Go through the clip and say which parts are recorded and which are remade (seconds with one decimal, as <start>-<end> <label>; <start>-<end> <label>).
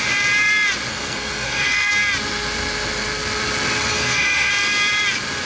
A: 0.0-0.9 recorded; 0.9-1.9 remade; 1.9-3.9 recorded; 3.9-4.5 remade; 4.5-5.5 recorded